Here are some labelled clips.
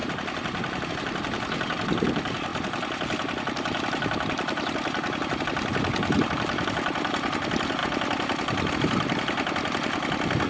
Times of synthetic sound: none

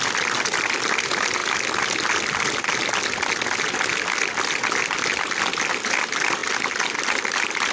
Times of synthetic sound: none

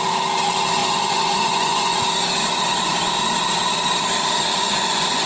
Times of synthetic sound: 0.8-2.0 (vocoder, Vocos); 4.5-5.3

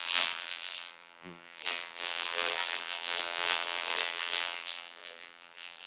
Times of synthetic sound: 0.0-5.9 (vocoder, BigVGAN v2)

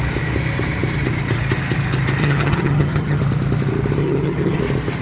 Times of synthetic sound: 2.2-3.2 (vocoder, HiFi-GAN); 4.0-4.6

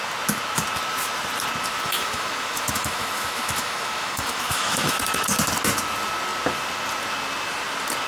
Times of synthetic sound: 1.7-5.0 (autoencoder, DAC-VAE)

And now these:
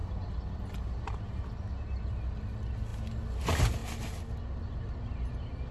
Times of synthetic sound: none